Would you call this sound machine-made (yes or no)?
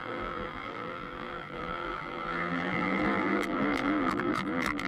yes